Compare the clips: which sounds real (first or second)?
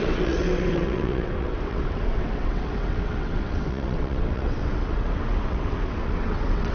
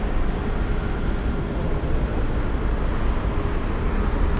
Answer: second